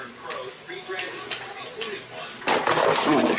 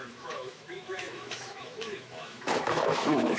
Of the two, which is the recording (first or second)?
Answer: first